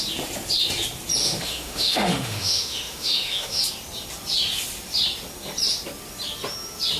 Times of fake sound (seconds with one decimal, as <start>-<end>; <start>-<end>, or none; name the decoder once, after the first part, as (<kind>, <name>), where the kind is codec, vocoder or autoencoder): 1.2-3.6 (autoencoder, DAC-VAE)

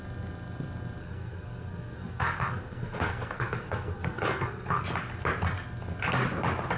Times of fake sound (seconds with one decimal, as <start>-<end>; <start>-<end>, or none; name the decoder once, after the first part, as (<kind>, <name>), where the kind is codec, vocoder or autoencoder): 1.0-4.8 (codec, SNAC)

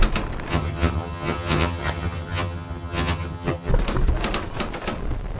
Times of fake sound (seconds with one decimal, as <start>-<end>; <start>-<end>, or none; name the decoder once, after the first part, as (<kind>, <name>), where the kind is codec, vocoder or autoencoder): 0.5-3.7 (vocoder, HiFi-GAN)

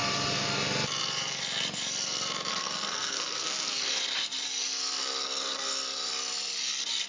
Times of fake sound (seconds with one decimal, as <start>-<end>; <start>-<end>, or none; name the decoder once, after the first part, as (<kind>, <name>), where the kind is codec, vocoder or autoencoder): 2.5-3.8 (codec, SNAC)

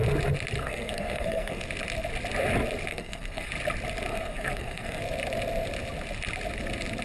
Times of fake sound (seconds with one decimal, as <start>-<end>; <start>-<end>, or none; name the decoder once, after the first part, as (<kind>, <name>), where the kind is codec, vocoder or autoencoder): 0.6-1.6 (codec, SNAC); 2.9-3.5; 4.1-5.0

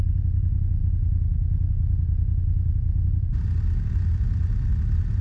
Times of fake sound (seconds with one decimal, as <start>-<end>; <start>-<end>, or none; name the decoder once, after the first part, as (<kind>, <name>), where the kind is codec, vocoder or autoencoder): none

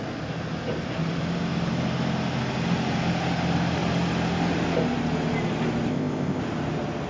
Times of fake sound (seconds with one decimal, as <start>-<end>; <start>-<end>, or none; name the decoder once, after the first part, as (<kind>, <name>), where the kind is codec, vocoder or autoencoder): 5.9-6.4 (codec, ZipCodec)

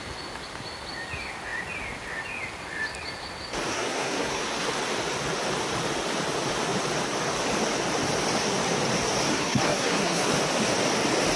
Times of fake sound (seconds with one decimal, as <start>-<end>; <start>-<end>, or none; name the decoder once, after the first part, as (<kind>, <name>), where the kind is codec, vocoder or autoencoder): 3.7-4.4 (codec, SNAC); 9.3-10.3